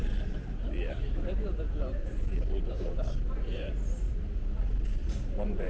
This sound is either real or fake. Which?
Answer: fake